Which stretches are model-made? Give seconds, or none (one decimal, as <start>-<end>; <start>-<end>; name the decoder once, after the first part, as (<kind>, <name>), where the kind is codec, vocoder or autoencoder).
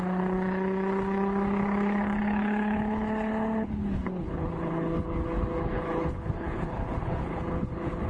0.0-8.1 (codec, HILCodec)